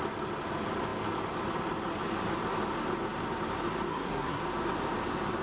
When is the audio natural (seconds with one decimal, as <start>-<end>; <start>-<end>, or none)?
0.0-3.9; 4.4-5.4

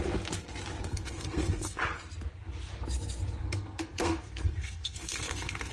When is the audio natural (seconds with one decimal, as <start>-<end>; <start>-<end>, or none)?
0.0-0.9; 1.8-3.4

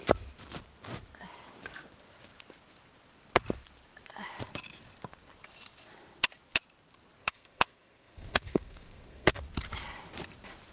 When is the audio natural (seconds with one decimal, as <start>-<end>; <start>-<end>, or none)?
0.0-7.2; 9.4-10.7

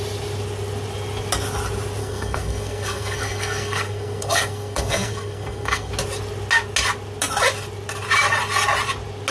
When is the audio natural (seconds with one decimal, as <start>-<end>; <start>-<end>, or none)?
0.0-2.0; 5.9-9.3

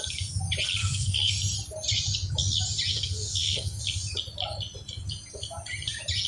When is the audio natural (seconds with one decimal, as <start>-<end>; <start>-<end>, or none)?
0.0-0.8; 1.3-2.9; 3.8-6.3

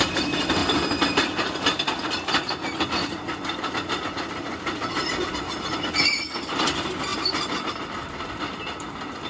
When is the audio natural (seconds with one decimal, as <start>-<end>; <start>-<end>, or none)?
0.0-9.3